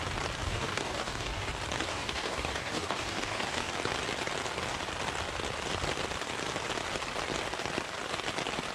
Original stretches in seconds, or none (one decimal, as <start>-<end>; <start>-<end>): 0.0-0.4; 1.5-1.9; 3.7-8.7